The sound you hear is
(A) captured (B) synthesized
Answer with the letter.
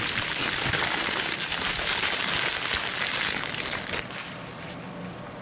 A